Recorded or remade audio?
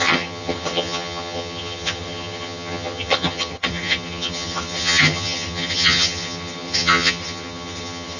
remade